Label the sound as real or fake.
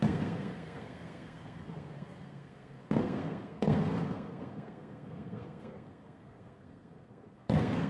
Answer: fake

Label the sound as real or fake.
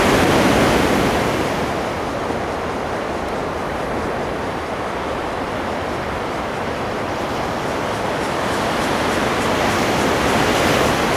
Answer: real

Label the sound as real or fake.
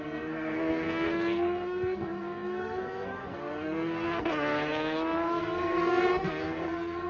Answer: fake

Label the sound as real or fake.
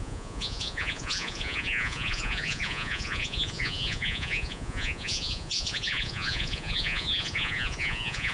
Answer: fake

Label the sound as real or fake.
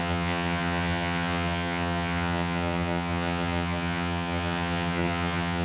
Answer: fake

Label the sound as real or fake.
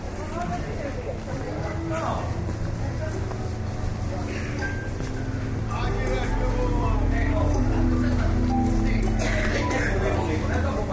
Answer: real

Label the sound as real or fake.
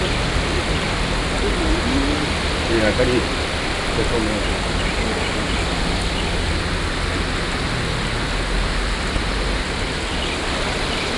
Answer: real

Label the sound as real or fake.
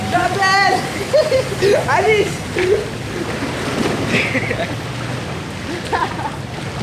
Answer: real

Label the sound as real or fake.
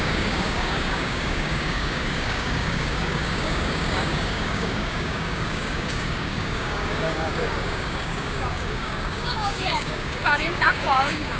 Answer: fake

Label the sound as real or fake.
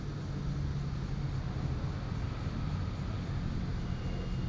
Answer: real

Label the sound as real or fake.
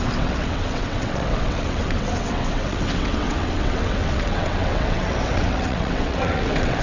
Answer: fake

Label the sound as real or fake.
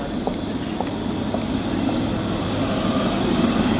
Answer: real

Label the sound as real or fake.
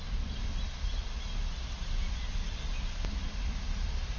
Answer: real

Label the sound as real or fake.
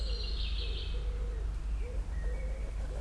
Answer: real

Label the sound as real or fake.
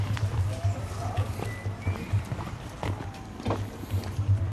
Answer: fake